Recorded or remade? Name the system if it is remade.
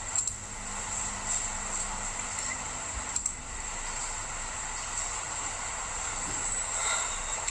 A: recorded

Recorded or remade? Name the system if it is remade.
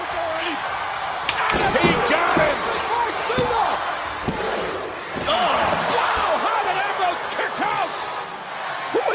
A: recorded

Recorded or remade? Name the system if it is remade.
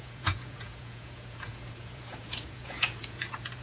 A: remade, vocoder, Vocos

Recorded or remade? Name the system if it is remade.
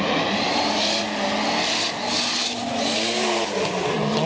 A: recorded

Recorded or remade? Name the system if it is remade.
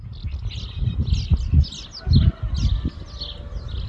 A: recorded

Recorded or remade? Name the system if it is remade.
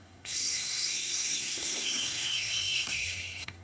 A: remade, codec, SNAC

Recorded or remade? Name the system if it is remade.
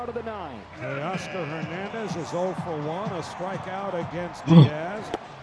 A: recorded